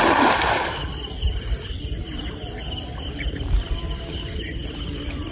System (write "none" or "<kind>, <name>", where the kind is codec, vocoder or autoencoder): none